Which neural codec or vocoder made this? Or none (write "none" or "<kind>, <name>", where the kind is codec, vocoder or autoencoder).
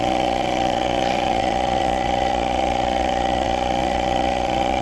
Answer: vocoder, Vocos